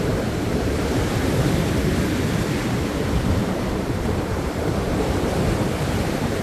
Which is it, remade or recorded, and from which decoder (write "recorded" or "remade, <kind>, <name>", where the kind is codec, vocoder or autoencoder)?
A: remade, vocoder, BigVGAN v2